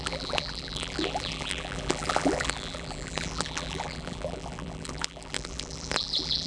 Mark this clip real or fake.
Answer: fake